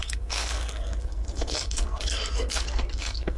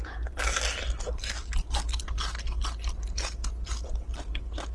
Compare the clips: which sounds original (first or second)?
second